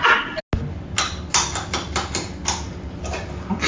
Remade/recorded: recorded